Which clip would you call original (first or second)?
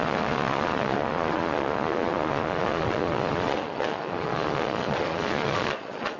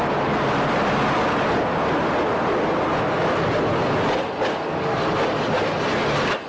second